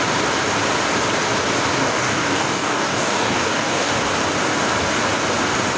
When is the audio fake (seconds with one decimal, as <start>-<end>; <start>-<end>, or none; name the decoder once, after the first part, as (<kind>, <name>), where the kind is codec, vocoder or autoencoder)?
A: 1.8-3.9 (codec, DAC)